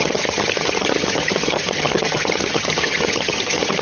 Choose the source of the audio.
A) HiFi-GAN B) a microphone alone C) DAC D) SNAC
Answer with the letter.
A